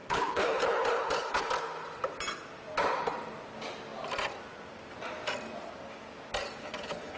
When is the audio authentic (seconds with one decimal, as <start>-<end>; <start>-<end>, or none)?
1.5-6.6